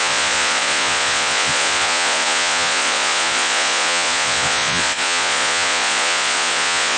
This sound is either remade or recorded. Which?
remade